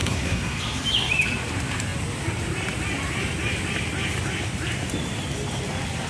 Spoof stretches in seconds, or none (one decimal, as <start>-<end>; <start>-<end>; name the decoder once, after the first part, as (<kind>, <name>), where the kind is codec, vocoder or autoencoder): 0.0-0.6 (codec, SNAC)